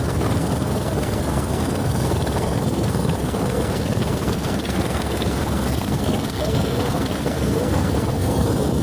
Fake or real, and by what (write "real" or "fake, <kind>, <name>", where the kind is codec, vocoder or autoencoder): fake, codec, SNAC